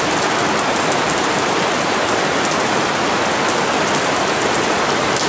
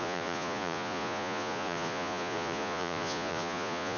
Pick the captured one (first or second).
first